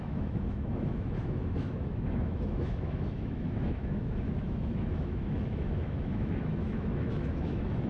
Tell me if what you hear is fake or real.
fake